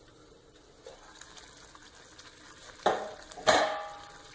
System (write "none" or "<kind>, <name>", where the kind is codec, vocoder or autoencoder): none